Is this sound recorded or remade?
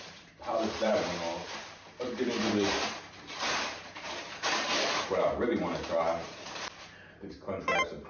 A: remade